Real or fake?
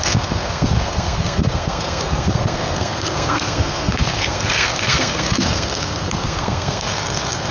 fake